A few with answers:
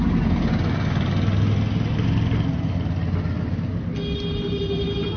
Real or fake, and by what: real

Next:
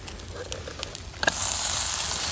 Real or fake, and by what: real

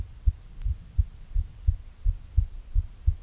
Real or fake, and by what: real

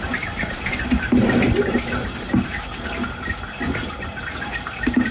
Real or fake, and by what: real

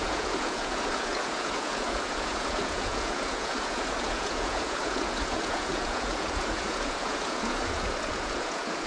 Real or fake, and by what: fake, vocoder, Vocos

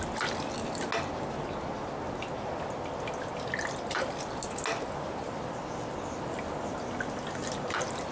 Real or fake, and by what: real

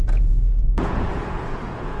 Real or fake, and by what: fake, vocoder, Vocos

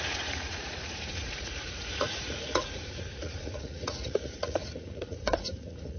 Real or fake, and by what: fake, vocoder, Vocos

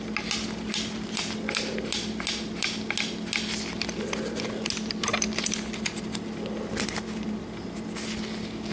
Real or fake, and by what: real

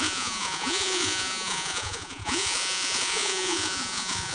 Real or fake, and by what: fake, vocoder, Vocos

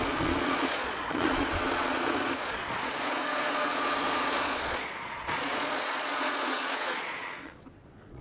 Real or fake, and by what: fake, vocoder, Vocos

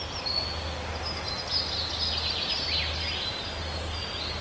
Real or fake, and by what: real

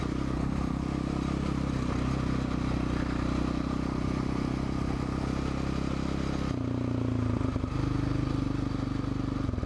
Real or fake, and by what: real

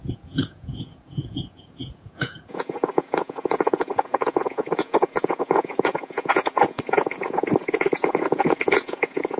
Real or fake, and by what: fake, vocoder, Vocos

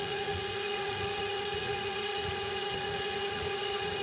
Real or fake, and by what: fake, vocoder, Vocos